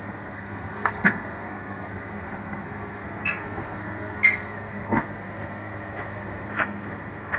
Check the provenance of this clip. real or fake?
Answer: fake